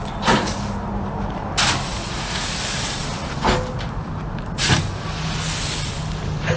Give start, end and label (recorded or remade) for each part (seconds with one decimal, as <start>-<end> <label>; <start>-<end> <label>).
0.0-1.9 recorded; 1.9-2.4 remade; 2.4-6.6 recorded